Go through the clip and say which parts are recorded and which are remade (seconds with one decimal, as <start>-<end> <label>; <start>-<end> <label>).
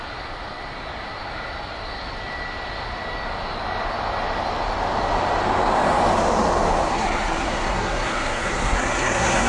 0.0-6.9 recorded; 6.9-9.5 remade